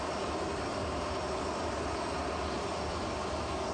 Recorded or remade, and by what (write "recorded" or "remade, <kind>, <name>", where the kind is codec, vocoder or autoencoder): recorded